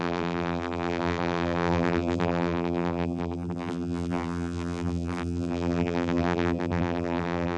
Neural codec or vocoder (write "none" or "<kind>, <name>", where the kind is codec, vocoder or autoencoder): vocoder, BigVGAN v2